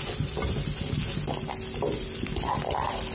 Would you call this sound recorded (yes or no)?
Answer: yes